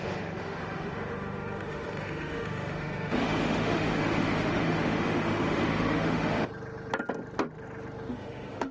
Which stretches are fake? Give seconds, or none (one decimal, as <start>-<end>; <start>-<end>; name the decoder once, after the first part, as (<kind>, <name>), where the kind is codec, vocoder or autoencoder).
0.0-6.5 (autoencoder, DAC-VAE); 8.1-8.7